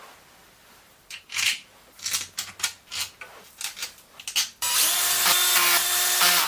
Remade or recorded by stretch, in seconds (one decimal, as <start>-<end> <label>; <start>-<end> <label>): 0.0-0.4 recorded; 0.4-2.5 remade; 2.5-6.5 recorded